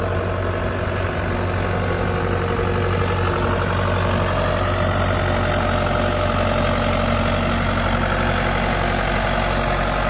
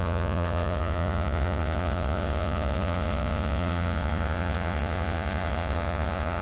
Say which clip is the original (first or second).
first